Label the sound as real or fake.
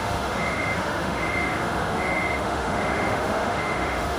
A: fake